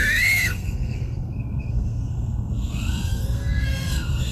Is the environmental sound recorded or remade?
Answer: remade